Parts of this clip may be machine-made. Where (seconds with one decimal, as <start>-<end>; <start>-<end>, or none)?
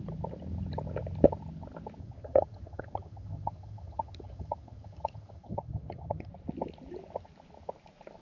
2.0-6.3